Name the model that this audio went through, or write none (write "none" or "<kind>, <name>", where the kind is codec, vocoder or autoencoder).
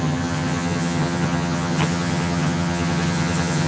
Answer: vocoder, HiFi-GAN